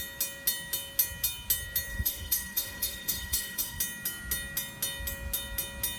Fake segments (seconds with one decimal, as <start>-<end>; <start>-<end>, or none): 1.9-3.8